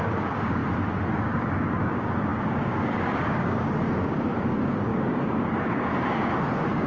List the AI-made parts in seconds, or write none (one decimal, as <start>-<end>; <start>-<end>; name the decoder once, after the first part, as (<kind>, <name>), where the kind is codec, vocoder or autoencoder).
0.0-0.6 (codec, DAC); 1.1-6.9